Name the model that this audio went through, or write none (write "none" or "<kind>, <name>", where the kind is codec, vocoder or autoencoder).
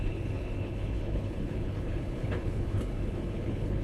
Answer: codec, HILCodec